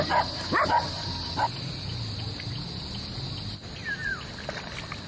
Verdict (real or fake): real